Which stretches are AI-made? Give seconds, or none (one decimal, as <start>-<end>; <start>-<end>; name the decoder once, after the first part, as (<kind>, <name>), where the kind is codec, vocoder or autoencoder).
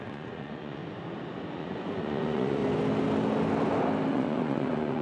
0.0-0.8 (vocoder, Vocos); 1.5-2.6; 4.1-5.0